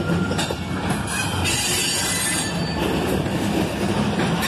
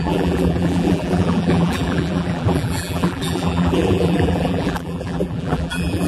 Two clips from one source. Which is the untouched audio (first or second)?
first